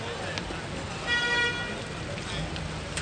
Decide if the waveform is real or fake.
real